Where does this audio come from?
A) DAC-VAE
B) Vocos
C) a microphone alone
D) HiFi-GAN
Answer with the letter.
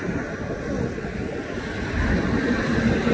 C